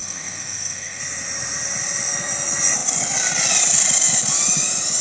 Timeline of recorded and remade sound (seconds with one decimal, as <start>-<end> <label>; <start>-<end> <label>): 0.0-1.0 remade; 1.0-5.0 recorded